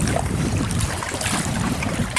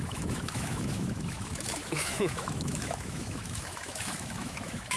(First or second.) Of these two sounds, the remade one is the second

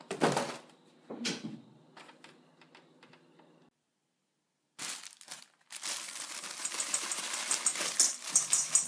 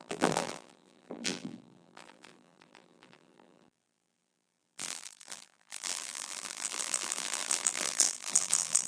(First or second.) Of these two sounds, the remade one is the second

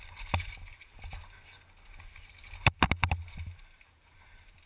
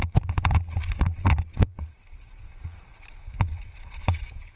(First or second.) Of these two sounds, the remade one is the second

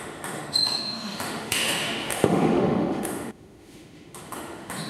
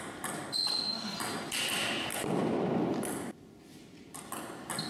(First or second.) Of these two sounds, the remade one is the first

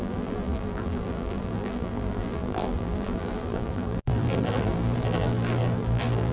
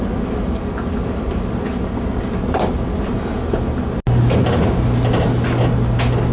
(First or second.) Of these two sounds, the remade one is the first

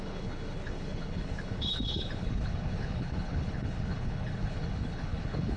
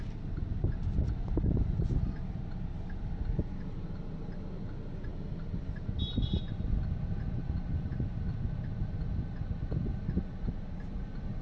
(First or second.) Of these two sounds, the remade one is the first